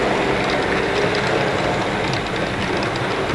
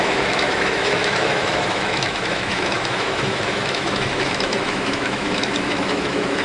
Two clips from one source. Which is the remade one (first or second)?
second